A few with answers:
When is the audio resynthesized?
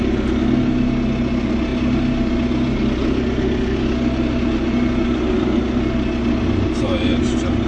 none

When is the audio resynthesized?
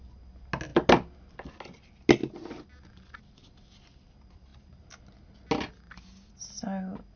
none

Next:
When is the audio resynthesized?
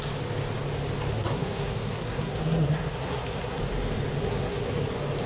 1.1-3.6 (codec, SNAC); 4.2-4.7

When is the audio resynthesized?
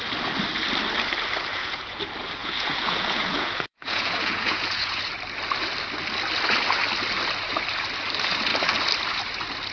1.5-2.0 (vocoder, Vocos); 2.4-5.1